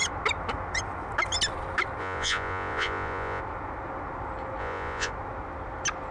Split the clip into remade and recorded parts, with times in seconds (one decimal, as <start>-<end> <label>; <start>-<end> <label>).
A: 0.0-2.0 recorded; 2.0-3.4 remade; 3.4-4.6 recorded; 4.6-5.1 remade; 5.1-6.1 recorded

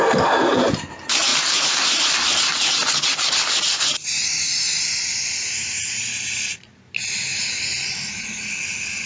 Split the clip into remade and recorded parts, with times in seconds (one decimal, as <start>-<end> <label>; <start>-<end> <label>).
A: 0.0-1.3 recorded; 1.3-2.4 remade; 2.4-9.1 recorded

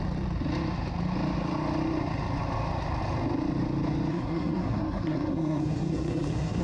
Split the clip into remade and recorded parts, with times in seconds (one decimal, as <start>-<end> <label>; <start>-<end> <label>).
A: 0.0-4.1 recorded; 4.1-6.6 remade